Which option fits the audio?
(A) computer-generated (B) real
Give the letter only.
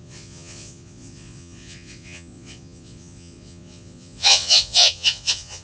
A